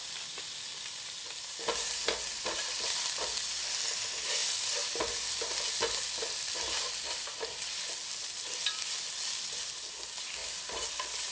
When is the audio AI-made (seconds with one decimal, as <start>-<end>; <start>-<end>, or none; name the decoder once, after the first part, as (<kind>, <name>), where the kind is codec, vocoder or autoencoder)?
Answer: 4.4-5.0 (vocoder, BigVGAN v2); 10.4-10.9